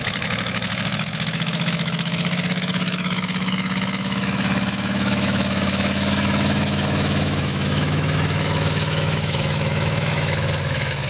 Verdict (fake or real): fake